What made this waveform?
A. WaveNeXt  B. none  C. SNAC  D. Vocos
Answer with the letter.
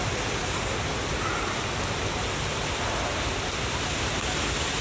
B